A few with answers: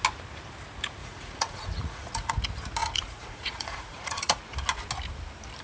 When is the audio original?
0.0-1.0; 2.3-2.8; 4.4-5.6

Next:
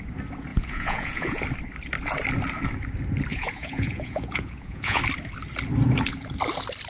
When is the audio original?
0.0-0.5; 1.4-3.3; 5.0-6.9

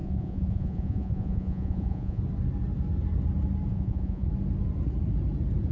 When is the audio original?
2.2-3.7; 4.3-5.7

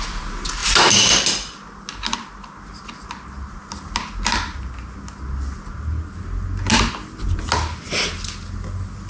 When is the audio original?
0.0-9.1

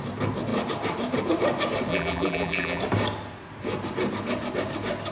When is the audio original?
0.0-1.9; 2.8-5.1